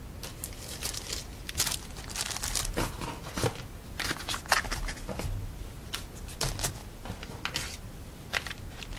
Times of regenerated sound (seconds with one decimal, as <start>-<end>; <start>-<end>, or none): none